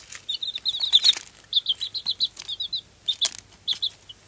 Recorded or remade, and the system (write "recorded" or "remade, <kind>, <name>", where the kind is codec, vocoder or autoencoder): recorded